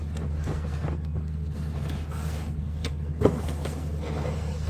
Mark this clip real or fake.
fake